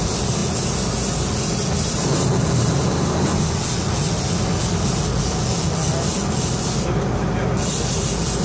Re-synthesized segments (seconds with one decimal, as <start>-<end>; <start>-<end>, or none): none